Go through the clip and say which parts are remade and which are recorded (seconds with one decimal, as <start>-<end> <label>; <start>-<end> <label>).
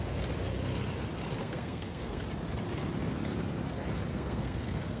0.0-1.4 recorded; 1.4-2.2 remade; 2.2-4.1 recorded; 4.1-5.0 remade